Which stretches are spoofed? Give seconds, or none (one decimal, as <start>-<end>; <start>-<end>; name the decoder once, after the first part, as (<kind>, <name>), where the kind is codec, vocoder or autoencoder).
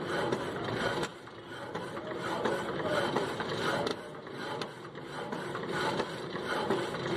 0.0-3.9 (vocoder, BigVGAN v2); 5.6-7.2